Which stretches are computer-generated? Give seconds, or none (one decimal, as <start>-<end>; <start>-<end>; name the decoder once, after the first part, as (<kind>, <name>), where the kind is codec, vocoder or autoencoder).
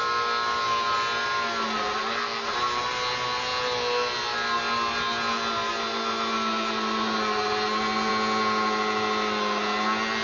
none